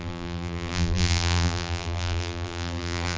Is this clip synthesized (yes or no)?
yes